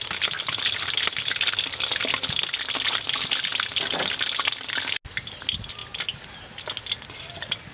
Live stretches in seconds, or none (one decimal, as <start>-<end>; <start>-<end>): 0.0-7.7